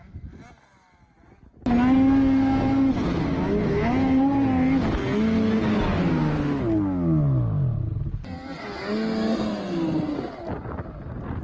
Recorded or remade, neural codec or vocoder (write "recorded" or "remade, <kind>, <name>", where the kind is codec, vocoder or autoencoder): recorded